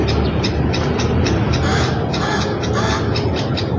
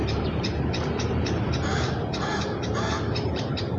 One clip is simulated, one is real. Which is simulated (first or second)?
second